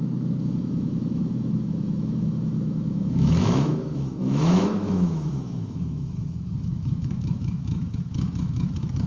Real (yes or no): no